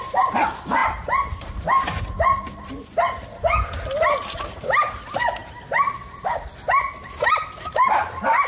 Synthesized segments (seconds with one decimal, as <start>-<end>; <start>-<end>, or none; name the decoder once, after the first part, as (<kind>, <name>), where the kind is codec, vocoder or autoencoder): none